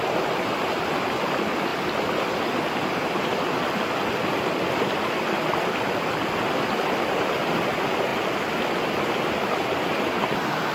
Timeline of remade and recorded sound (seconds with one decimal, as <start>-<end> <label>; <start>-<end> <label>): 0.0-10.7 recorded